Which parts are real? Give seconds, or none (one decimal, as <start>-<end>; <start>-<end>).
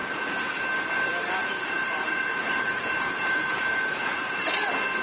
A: 0.6-1.4; 4.4-5.0